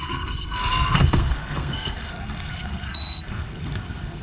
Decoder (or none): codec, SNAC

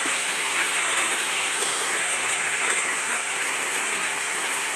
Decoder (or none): codec, SNAC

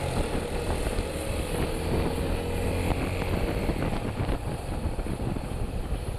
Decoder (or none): none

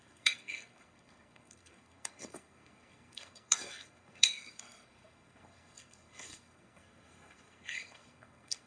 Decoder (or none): codec, SNAC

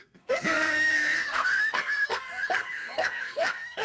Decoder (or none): codec, SNAC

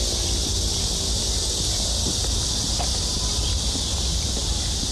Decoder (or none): none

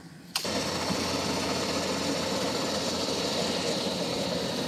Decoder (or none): none